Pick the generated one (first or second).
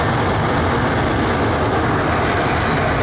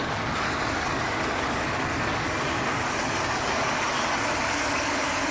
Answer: second